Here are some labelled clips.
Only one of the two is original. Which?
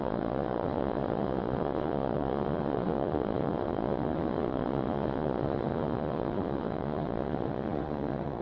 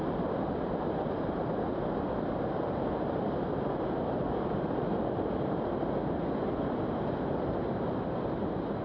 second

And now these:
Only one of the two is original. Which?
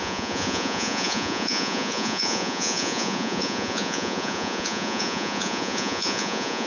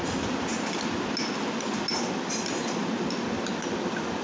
second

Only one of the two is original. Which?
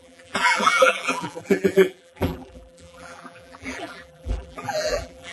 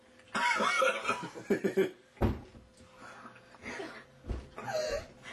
second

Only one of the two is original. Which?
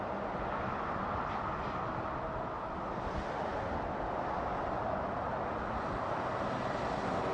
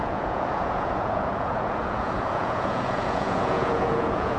first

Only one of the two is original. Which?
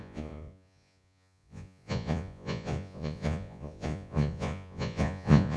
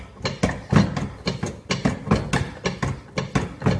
second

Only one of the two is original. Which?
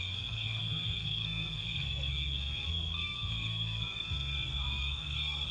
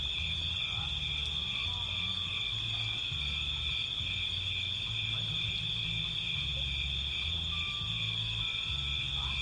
second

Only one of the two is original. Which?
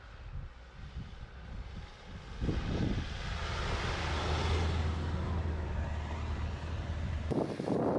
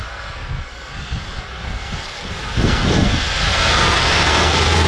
first